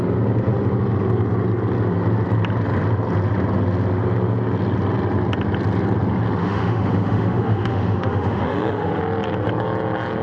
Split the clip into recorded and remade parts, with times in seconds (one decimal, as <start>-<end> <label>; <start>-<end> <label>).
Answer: 0.0-6.4 recorded; 6.4-9.0 remade; 9.0-10.2 recorded